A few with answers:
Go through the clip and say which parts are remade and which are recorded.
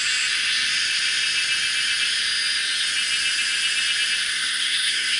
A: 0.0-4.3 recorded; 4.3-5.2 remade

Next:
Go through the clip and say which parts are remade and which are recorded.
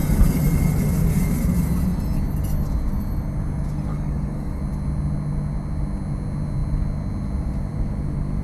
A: 0.0-3.9 recorded; 3.9-4.6 remade; 4.6-8.4 recorded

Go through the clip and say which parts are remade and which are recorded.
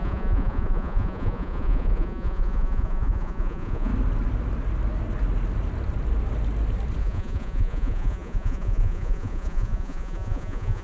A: 0.0-3.9 remade; 3.9-7.0 recorded; 7.0-10.8 remade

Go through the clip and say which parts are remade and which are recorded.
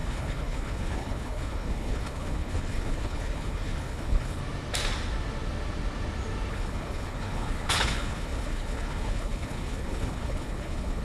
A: 0.0-4.4 remade; 4.4-6.5 recorded; 6.5-11.0 remade